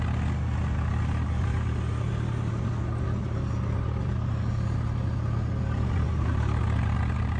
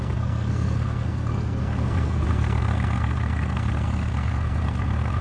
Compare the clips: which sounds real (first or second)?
first